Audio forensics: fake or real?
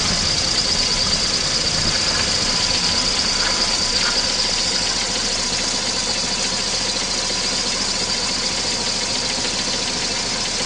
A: real